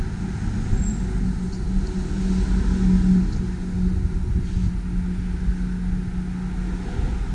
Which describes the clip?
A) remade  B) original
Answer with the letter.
B